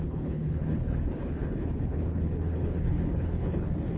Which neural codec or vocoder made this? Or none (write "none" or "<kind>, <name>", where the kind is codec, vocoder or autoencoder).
codec, HILCodec